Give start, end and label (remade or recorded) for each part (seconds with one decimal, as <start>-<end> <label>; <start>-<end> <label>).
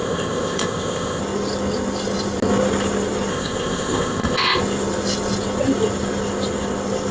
0.0-1.2 remade; 1.2-3.3 recorded; 3.3-4.6 remade; 4.6-7.1 recorded